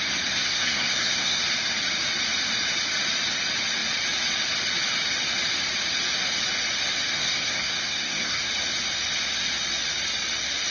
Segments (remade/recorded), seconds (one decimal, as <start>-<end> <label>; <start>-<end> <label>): 0.0-0.4 recorded; 0.4-1.4 remade; 1.4-7.1 recorded; 7.1-8.5 remade; 8.5-10.7 recorded